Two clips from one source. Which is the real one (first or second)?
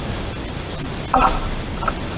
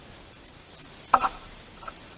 first